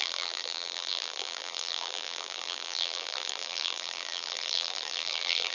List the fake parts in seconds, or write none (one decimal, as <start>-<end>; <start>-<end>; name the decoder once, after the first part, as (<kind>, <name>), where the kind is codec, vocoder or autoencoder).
0.0-5.5 (vocoder, BigVGAN v2)